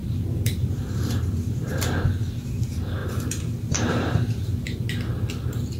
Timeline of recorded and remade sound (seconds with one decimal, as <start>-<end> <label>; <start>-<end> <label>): 0.0-1.7 remade; 1.7-3.0 recorded; 3.0-4.9 remade; 4.9-5.8 recorded